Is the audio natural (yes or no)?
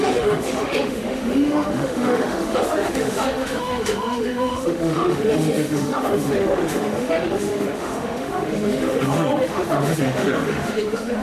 no